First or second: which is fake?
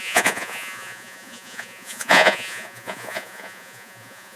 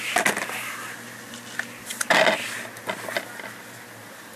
first